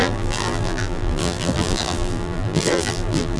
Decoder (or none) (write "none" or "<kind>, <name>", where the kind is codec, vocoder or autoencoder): vocoder, BigVGAN v2